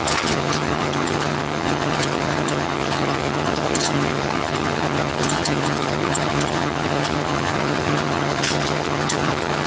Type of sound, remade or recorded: remade